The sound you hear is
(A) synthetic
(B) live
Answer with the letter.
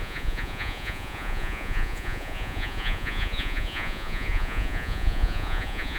A